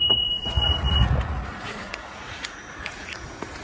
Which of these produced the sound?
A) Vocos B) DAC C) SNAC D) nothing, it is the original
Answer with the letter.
A